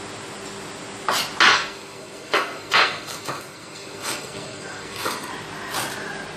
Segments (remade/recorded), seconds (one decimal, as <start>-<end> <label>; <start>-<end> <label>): 0.0-1.5 recorded; 1.5-5.3 remade; 5.3-6.4 recorded